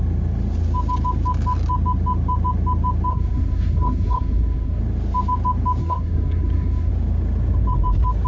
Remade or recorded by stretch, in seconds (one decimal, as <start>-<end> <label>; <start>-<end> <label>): 0.0-3.1 recorded; 3.1-4.8 remade; 4.8-5.8 recorded; 5.8-6.9 remade; 6.9-8.3 recorded